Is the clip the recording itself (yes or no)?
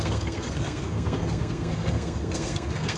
no